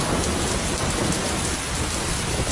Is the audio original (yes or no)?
yes